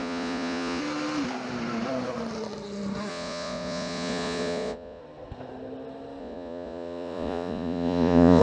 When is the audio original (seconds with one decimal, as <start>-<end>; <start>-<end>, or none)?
0.8-3.1; 5.0-6.2